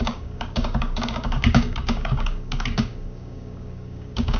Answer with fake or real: fake